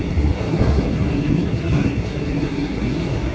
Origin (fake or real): fake